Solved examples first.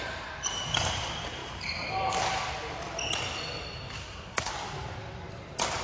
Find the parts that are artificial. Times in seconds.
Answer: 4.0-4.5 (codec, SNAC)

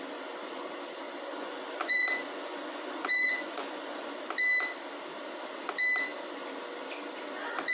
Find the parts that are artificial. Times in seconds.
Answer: 1.3-4.1 (vocoder, Vocos)

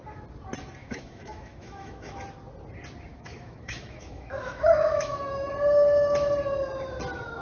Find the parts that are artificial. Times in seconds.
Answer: 0.8-2.1 (autoencoder, DAC-VAE); 3.1-5.5

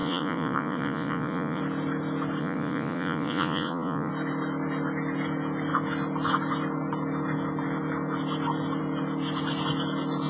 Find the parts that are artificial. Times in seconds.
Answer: 0.0-1.6 (vocoder, Vocos); 2.4-4.1

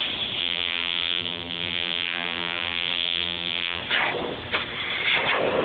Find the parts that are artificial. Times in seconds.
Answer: 0.4-3.8 (vocoder, BigVGAN v2)

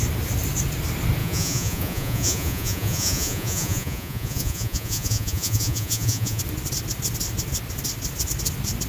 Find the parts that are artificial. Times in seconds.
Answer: 1.2-6.4 (vocoder, Vocos)

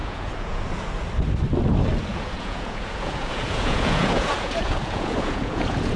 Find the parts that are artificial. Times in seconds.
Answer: 0.0-0.6 (vocoder, Vocos); 2.1-6.0